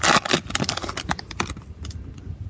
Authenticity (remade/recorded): recorded